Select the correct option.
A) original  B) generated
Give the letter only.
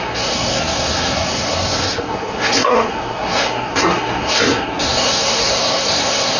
B